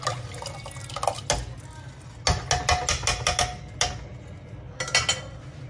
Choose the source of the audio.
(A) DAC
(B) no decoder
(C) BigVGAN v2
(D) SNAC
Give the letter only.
B